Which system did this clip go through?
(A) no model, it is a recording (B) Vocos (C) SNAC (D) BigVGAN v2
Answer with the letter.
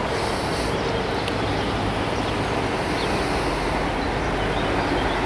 A